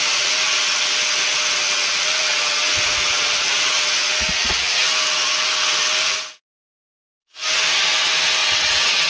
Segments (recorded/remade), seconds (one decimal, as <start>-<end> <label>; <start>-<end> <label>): 0.0-8.4 recorded; 8.4-9.1 remade